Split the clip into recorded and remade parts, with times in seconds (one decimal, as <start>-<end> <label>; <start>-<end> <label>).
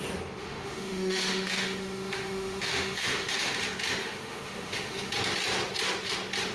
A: 0.0-0.4 recorded; 0.4-3.6 remade; 3.6-4.0 recorded; 4.0-5.1 remade; 5.1-6.5 recorded